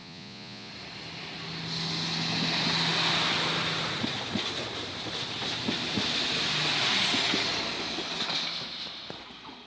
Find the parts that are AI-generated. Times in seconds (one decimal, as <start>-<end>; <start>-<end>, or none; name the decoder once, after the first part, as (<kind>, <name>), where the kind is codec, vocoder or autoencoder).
0.0-0.7 (vocoder, Vocos)

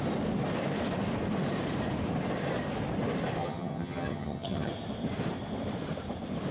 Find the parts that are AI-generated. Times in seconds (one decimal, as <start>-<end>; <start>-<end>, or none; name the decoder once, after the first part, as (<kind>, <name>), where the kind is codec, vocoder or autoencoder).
3.4-4.7 (vocoder, HiFi-GAN)